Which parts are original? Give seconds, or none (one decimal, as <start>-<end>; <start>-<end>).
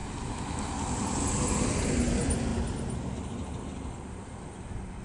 0.0-5.0